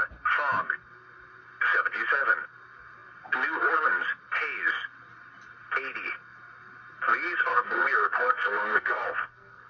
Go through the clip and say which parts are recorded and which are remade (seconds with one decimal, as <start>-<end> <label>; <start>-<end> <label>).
0.0-7.5 recorded; 7.5-9.7 remade